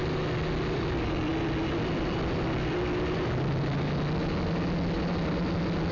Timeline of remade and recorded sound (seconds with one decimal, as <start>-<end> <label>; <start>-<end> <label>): 0.0-5.9 recorded